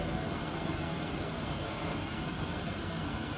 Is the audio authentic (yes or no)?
no